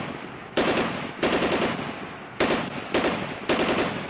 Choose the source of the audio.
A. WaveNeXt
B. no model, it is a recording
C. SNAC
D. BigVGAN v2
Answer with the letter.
B